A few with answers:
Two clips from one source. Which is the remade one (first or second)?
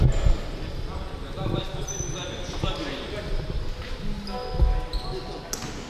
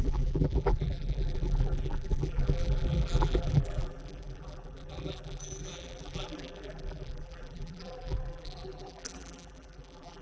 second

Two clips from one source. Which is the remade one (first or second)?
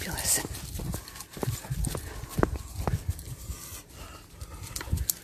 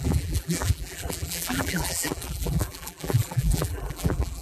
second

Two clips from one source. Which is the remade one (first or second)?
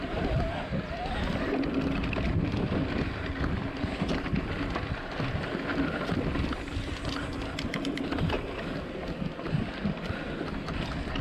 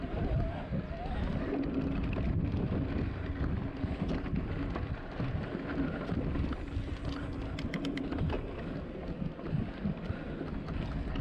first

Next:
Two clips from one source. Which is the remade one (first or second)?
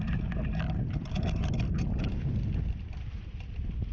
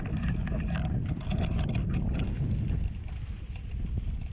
second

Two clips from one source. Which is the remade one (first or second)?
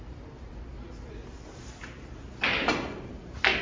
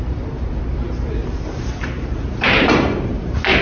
second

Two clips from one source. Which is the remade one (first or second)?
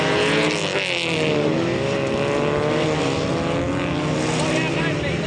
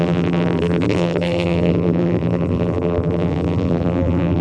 second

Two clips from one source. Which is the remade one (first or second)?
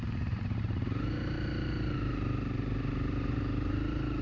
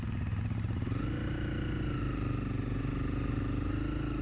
first